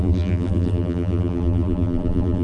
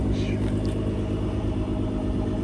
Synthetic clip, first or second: first